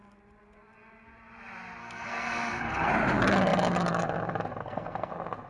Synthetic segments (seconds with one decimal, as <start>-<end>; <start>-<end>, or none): 1.8-2.9; 4.6-5.1